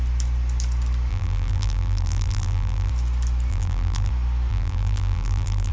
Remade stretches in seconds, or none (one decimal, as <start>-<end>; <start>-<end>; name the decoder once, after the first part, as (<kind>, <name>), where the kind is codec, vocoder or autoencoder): 1.1-2.9 (vocoder, BigVGAN v2); 3.5-4.1; 4.5-5.7

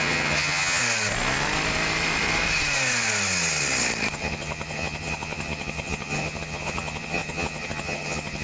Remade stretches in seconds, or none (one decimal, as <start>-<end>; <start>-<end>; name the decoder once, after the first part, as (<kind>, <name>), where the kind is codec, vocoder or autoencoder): 0.0-0.8 (vocoder, HiFi-GAN); 4.1-8.4

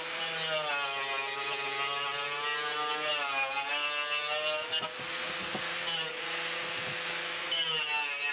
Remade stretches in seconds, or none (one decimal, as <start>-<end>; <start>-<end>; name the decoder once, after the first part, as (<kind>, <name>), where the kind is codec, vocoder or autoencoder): none

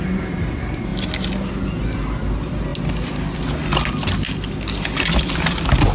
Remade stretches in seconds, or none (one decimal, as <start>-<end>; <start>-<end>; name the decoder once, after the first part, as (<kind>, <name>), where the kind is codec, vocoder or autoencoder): none